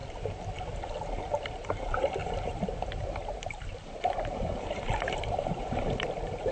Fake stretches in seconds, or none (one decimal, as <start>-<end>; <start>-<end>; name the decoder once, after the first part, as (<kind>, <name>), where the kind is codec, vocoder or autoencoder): 1.0-6.5 (vocoder, BigVGAN v2)